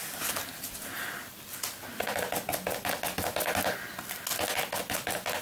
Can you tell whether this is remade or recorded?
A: recorded